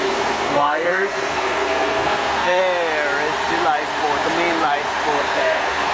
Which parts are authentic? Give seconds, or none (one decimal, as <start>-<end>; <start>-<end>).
2.6-5.2

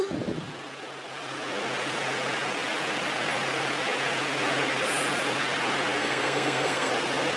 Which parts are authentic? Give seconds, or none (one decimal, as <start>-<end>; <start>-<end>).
0.0-6.0; 6.9-7.4

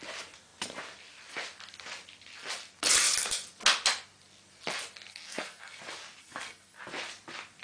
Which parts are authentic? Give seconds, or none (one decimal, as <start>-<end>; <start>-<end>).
0.0-5.1; 5.8-6.2; 6.8-7.6

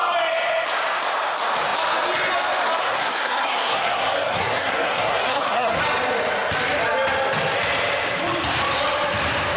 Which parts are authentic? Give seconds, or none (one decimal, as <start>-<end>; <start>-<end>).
0.0-2.8; 5.8-9.6

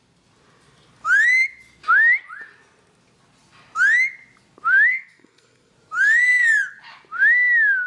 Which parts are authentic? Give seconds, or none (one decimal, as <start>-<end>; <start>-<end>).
0.0-4.9; 5.7-7.9

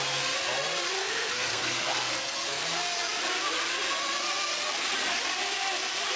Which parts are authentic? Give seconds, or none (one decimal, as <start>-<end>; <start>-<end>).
0.0-1.0; 2.6-6.2